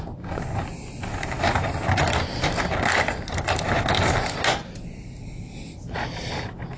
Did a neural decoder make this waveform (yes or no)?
no